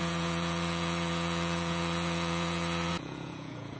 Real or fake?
fake